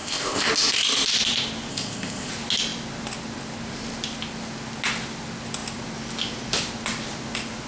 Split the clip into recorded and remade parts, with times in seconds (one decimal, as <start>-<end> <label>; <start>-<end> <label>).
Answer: 0.0-0.5 remade; 0.5-1.7 recorded; 1.7-2.3 remade; 2.3-7.7 recorded